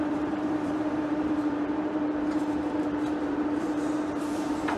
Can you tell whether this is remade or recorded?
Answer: remade